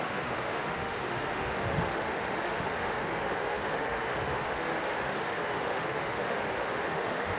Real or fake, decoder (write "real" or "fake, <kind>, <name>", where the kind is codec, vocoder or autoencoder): fake, autoencoder, DAC-VAE